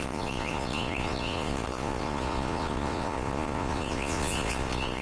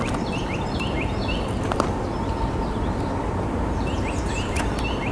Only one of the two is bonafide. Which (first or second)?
second